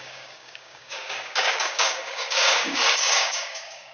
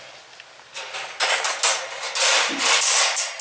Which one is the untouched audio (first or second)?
second